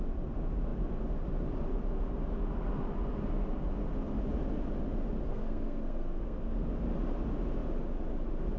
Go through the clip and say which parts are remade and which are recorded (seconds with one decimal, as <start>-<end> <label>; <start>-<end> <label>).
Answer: 0.0-5.3 recorded; 5.3-6.7 remade; 6.7-8.6 recorded